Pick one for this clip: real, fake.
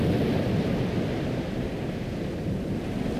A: real